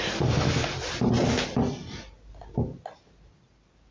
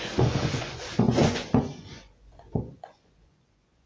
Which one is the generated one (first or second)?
second